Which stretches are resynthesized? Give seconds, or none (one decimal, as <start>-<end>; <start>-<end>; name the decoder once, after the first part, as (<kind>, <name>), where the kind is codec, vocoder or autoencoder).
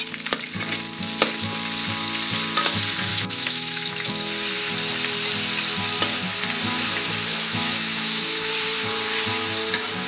3.1-4.1 (autoencoder, DAC-VAE); 7.3-8.5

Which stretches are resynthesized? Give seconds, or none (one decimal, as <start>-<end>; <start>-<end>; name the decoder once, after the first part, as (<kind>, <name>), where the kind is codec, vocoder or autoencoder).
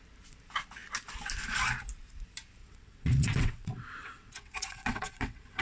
2.6-5.6 (vocoder, WaveNeXt)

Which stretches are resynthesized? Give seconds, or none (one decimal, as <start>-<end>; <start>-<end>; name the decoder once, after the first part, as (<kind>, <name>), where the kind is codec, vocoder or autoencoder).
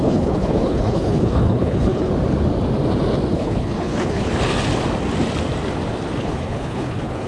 0.0-2.1 (codec, HILCodec); 3.3-4.3; 6.2-7.3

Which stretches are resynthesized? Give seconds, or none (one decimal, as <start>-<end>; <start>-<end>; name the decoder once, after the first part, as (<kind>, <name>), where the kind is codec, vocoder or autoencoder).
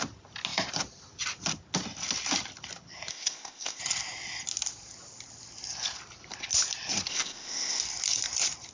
3.1-3.8 (codec, ZipCodec); 7.1-7.8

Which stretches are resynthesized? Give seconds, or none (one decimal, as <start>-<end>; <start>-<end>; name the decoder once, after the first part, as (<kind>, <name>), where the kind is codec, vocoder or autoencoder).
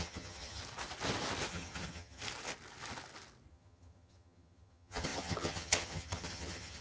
0.0-0.6 (vocoder, HiFi-GAN); 1.5-2.2; 3.5-6.8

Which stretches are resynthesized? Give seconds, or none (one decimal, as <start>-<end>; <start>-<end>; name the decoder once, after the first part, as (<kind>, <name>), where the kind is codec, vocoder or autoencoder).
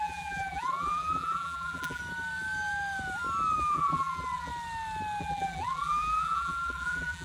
0.0-2.0 (vocoder, BigVGAN v2); 3.6-4.5; 5.2-7.2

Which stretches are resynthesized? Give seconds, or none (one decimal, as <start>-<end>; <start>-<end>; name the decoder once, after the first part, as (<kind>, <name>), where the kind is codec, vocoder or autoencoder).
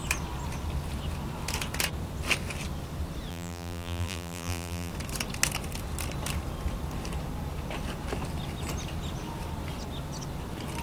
3.3-4.9 (vocoder, BigVGAN v2)